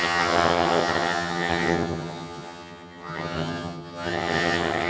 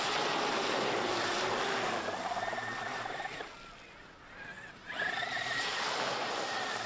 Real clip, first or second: second